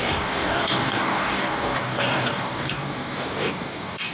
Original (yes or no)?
no